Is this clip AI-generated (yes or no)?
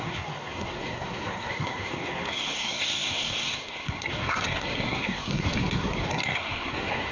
yes